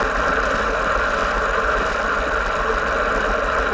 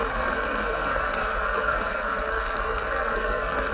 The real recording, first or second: first